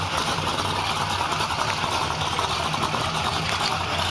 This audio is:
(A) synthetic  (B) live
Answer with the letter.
B